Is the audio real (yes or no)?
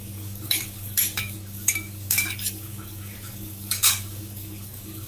no